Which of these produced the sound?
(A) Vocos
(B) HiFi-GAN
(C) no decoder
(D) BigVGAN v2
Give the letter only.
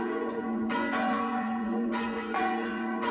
A